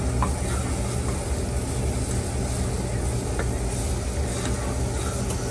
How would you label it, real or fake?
real